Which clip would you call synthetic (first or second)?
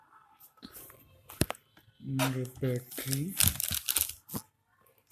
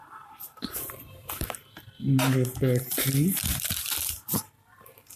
second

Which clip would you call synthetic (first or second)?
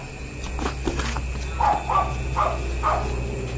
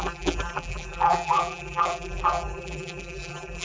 second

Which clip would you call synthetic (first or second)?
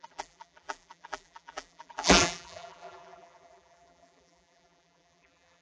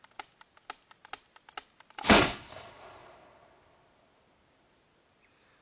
first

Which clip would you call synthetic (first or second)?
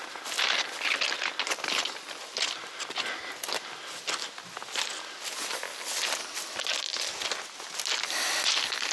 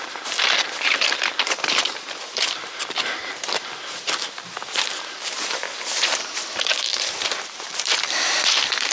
second